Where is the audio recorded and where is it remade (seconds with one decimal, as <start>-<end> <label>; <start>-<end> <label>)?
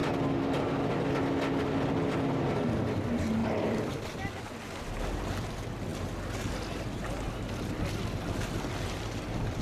0.0-3.4 recorded; 3.4-4.4 remade; 4.4-9.6 recorded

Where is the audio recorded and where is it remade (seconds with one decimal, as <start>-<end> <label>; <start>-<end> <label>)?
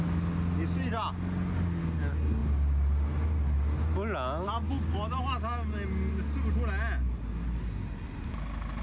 0.0-8.8 recorded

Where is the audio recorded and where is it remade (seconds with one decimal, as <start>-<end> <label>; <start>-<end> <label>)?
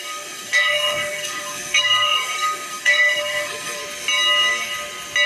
0.0-3.8 remade; 3.8-5.3 recorded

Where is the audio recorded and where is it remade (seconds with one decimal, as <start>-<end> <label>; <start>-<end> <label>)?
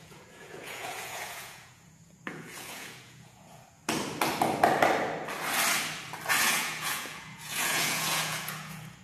0.0-3.8 remade; 3.8-6.4 recorded; 6.4-9.0 remade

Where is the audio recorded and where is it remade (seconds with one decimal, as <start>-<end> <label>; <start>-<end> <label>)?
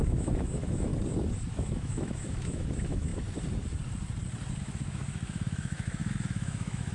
0.0-0.9 remade; 0.9-1.5 recorded; 1.5-3.1 remade; 3.1-4.6 recorded; 4.6-6.9 remade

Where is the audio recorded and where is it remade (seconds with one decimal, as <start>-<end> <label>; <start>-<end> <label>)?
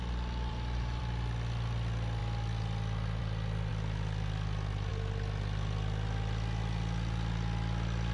0.0-0.5 recorded; 0.5-1.0 remade; 1.0-8.1 recorded